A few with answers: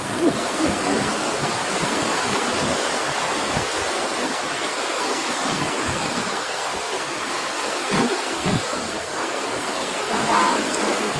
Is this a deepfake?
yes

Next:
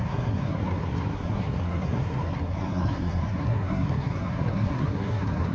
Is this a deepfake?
yes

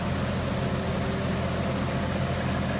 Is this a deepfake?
no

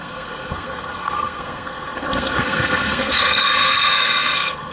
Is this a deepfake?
yes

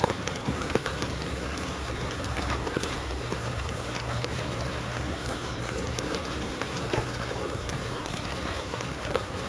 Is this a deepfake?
yes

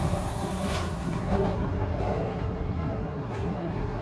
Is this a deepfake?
yes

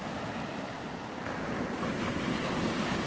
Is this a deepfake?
no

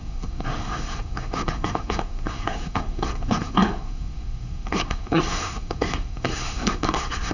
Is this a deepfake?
yes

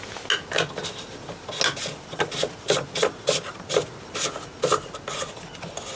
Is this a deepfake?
no